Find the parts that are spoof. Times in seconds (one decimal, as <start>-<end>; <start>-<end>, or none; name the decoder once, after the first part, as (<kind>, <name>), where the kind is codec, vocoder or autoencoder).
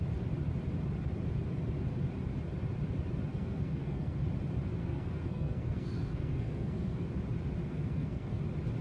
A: 3.3-4.2 (codec, SNAC); 4.8-7.1; 7.6-8.4